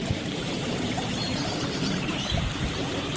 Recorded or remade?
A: remade